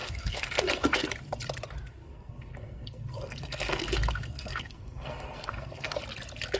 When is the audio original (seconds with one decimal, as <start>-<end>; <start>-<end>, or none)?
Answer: 1.1-2.0; 6.0-6.6